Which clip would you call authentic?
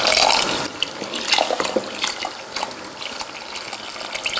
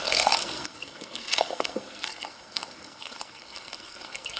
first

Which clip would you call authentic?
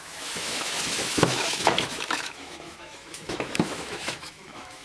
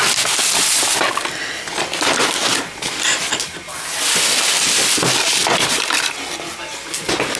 second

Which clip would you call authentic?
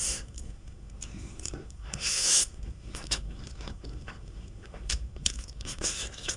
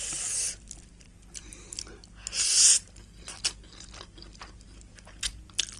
second